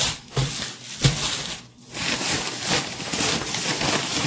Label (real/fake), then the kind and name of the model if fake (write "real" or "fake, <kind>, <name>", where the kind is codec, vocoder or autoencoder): real